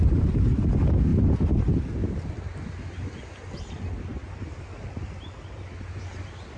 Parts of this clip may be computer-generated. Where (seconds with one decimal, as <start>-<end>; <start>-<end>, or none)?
none